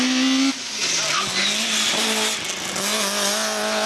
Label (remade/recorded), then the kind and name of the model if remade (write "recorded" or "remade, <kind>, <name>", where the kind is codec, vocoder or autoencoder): recorded